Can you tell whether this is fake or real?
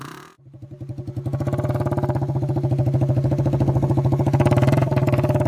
real